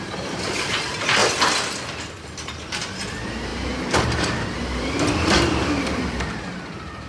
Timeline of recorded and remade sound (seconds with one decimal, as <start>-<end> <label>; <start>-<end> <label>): 0.0-1.2 remade; 1.2-2.2 recorded; 2.2-7.1 remade